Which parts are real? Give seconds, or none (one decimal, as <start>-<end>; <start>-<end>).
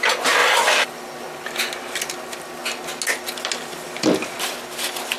0.0-0.4; 1.7-5.2